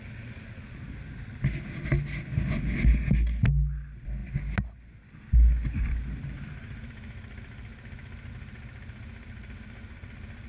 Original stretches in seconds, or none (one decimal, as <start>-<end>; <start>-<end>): 0.0-10.5